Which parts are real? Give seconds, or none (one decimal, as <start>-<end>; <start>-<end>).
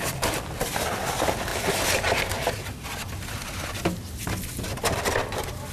1.5-2.5